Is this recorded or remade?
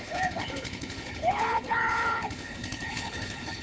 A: remade